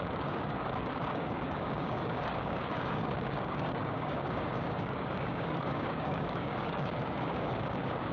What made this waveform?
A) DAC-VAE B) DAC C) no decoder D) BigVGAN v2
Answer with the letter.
B